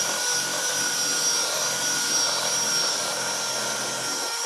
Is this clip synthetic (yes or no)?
no